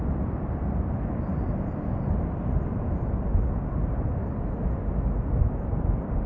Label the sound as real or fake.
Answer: real